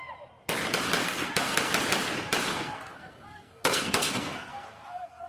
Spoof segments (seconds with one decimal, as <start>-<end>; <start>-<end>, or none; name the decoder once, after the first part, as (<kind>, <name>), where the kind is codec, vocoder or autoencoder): 1.0-1.7 (codec, SNAC); 2.5-5.3